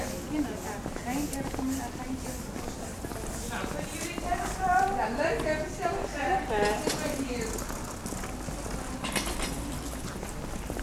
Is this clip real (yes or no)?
yes